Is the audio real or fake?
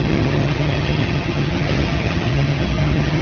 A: fake